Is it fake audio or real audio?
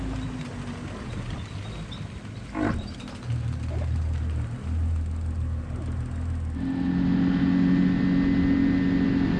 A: real